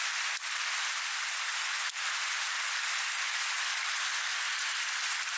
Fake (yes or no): no